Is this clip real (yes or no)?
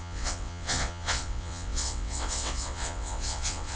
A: no